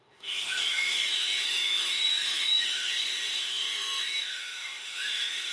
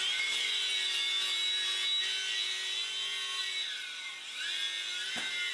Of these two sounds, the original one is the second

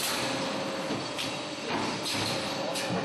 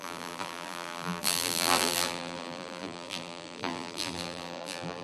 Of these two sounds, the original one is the first